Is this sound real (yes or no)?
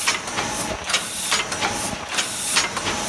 yes